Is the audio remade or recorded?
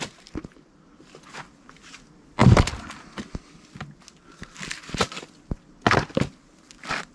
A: recorded